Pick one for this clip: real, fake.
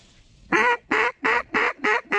fake